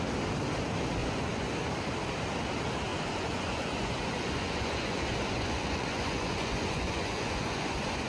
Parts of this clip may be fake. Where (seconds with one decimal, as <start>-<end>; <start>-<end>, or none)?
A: 1.0-1.5; 2.9-8.1